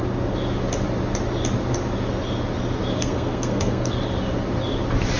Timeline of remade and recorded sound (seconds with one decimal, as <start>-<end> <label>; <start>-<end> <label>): 0.0-2.9 recorded; 2.9-4.0 remade; 4.0-5.2 recorded